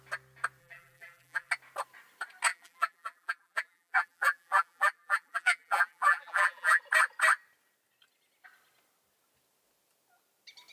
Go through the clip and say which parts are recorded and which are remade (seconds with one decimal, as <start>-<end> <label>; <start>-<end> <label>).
0.0-0.6 recorded; 0.6-1.5 remade; 1.5-2.5 recorded; 2.5-6.8 remade; 6.8-10.7 recorded